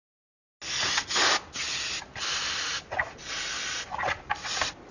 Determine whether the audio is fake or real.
real